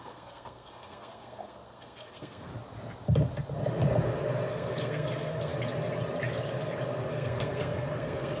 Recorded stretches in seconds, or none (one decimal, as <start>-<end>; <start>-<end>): 2.5-4.5; 5.5-7.1